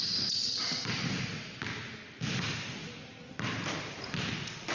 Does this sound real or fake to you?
real